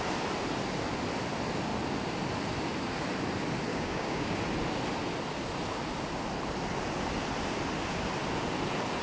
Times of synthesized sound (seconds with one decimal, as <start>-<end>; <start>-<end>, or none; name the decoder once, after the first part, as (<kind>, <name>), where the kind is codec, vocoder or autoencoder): 3.7-4.4 (codec, DAC)